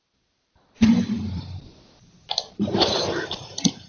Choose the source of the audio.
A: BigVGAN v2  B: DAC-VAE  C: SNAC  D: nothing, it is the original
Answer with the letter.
A